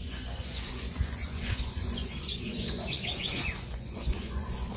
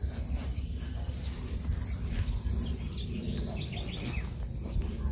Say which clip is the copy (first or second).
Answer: first